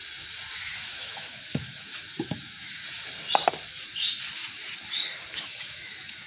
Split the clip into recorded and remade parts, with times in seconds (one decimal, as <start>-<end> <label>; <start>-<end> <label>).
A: 0.0-0.6 recorded; 0.6-2.8 remade; 2.8-5.4 recorded; 5.4-6.3 remade

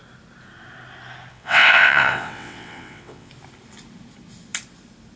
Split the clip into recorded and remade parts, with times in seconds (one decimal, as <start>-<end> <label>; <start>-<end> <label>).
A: 0.0-1.3 recorded; 1.3-3.3 remade; 3.3-5.2 recorded

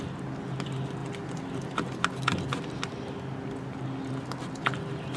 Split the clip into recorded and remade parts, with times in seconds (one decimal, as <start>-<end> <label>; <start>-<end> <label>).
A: 0.0-5.2 recorded

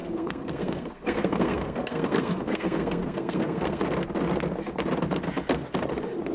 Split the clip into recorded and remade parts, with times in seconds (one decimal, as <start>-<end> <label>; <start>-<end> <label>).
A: 0.0-3.8 remade; 3.8-6.3 recorded

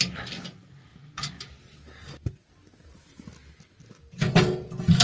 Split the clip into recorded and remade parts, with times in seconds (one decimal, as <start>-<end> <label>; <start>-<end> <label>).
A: 0.0-5.0 recorded

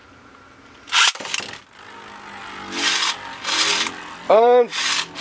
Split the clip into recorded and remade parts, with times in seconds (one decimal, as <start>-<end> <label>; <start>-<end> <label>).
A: 0.0-3.1 recorded; 3.1-5.2 remade

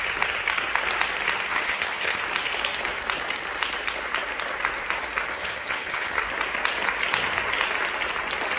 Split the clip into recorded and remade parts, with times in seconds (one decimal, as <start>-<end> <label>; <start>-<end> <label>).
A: 0.0-1.5 recorded; 1.5-2.2 remade; 2.2-5.3 recorded; 5.3-6.2 remade; 6.2-8.6 recorded

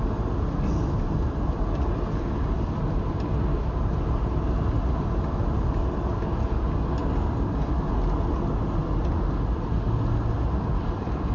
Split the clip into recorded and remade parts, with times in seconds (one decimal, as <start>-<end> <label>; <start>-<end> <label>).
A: 0.0-11.3 recorded